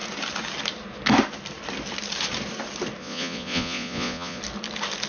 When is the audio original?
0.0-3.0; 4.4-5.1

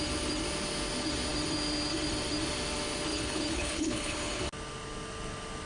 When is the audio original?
0.0-3.1; 4.4-5.7

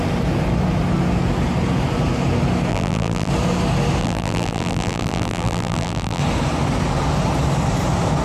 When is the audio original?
0.0-2.7; 3.3-4.0; 6.2-8.2

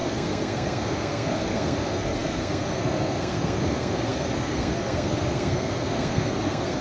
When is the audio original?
none

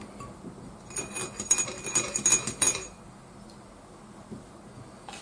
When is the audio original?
0.0-5.2